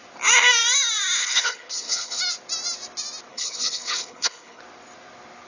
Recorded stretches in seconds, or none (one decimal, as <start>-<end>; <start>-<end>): 0.0-1.2; 2.2-3.3; 4.6-5.5